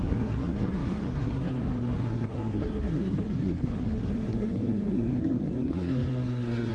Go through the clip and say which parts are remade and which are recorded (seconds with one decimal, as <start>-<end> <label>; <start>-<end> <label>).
0.0-6.7 remade